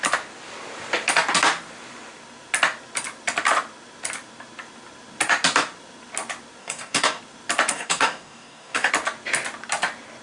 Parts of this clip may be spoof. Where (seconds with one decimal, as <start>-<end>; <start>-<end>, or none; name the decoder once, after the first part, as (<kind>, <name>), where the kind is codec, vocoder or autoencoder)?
6.6-7.2 (codec, DAC); 7.7-8.9